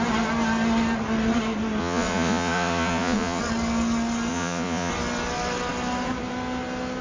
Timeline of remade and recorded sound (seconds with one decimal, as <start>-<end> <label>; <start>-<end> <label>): 0.0-1.8 recorded; 1.8-3.4 remade; 3.4-4.3 recorded; 4.3-4.9 remade; 4.9-7.0 recorded